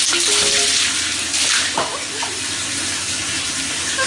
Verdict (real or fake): real